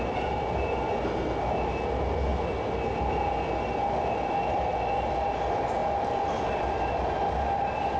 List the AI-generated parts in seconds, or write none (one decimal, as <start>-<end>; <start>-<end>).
none